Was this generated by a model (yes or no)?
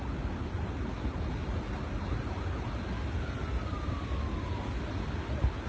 no